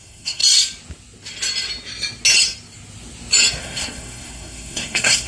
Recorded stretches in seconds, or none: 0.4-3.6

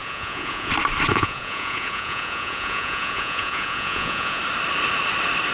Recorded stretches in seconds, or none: 0.7-1.1; 4.4-5.5